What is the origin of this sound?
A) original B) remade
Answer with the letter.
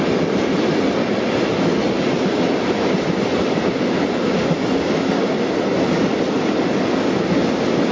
A